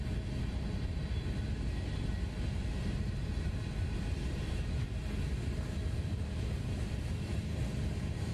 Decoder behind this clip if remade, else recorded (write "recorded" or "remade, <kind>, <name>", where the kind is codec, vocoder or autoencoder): recorded